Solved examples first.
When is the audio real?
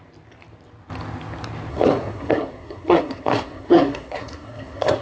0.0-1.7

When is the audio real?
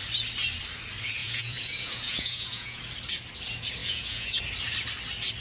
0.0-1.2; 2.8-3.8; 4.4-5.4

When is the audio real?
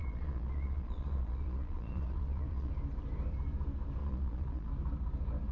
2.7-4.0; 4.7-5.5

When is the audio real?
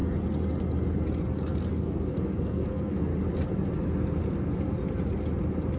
0.0-1.7; 3.1-5.8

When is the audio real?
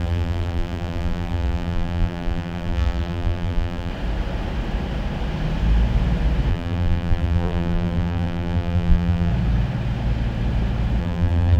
3.9-6.5; 9.3-11.0